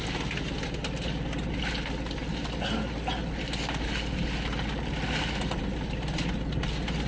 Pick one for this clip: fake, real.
real